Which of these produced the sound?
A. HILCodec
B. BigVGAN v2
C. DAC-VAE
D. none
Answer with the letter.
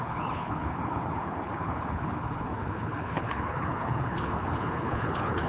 A